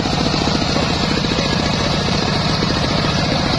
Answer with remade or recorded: remade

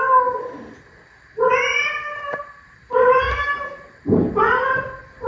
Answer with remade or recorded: recorded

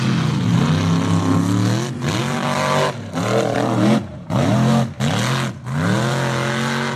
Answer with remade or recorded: recorded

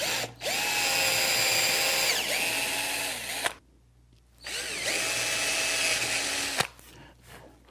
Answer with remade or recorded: recorded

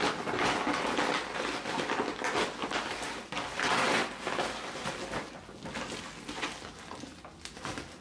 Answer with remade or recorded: recorded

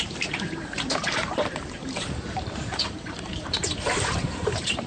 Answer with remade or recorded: remade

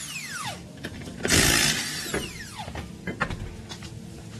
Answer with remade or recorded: recorded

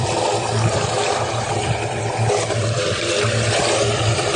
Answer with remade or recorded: remade